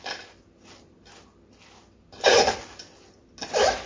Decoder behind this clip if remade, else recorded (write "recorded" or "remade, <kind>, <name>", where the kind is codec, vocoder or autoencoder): recorded